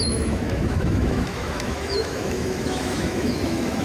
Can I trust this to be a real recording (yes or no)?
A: no